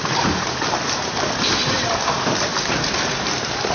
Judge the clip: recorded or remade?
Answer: remade